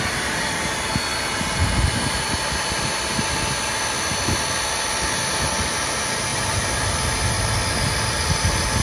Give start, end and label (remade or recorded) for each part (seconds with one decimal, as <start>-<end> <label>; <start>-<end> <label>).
0.0-8.8 recorded